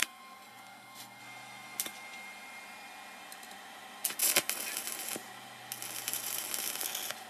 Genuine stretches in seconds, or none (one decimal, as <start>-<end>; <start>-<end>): 1.2-7.3